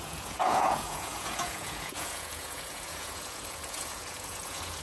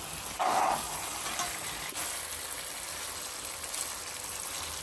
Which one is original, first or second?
second